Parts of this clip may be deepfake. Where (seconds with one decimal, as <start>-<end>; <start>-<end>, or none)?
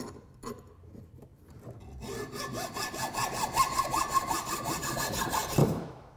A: 5.6-6.2